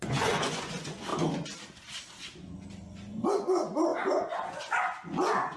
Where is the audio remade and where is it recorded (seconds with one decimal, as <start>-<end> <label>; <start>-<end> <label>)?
0.0-1.1 remade; 1.1-3.3 recorded; 3.3-5.6 remade